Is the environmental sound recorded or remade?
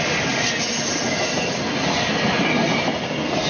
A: recorded